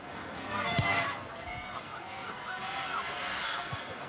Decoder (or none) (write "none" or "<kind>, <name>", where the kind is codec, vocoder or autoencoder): codec, SNAC